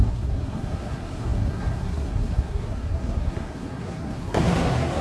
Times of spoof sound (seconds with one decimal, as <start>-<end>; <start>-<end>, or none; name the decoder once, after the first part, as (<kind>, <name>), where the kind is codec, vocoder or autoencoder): 0.0-5.0 (codec, SNAC)